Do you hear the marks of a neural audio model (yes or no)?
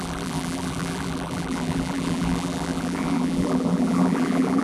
yes